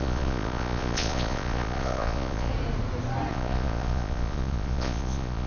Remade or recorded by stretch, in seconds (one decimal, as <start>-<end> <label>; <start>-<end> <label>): 0.0-2.5 remade; 2.5-3.3 recorded; 3.3-5.5 remade